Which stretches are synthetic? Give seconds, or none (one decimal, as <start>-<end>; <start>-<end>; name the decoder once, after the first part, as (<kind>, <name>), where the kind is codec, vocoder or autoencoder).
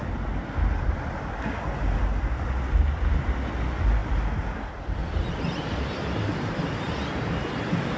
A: none